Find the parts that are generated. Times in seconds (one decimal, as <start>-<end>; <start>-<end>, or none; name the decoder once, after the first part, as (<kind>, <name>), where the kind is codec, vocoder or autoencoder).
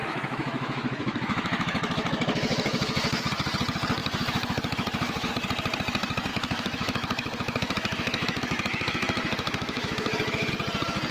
0.0-3.2 (autoencoder, DAC-VAE); 4.0-5.3; 6.3-10.5